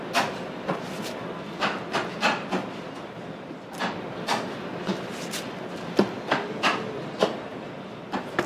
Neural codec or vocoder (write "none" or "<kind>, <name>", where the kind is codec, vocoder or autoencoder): none